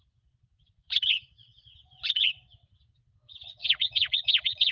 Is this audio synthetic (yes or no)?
yes